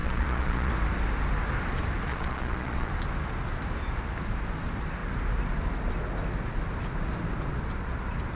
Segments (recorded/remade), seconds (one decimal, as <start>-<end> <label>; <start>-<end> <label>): 0.0-0.7 remade; 0.7-2.1 recorded; 2.1-2.9 remade; 2.9-8.4 recorded